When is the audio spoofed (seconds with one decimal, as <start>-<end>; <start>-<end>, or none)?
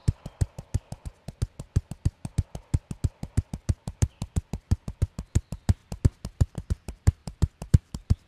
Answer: 3.5-5.8; 6.4-8.3